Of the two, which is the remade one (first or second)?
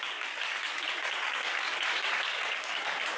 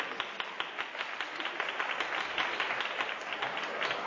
first